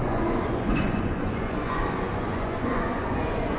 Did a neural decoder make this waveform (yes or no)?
yes